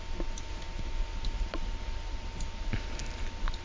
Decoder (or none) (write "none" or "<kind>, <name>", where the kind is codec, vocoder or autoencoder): none